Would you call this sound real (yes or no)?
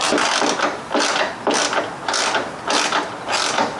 yes